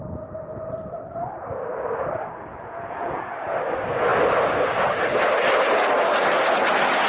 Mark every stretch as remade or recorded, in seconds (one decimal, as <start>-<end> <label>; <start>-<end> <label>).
0.0-2.5 recorded; 2.5-3.3 remade; 3.3-7.1 recorded